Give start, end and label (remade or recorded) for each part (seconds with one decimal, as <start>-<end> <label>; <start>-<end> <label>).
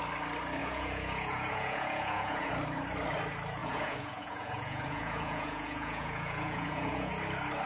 0.0-0.6 recorded; 0.6-2.5 remade; 2.5-3.6 recorded; 3.6-7.1 remade; 7.1-7.7 recorded